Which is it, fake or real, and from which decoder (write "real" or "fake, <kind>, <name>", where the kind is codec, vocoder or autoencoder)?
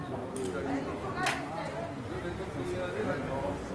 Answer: real